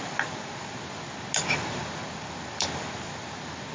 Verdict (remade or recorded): recorded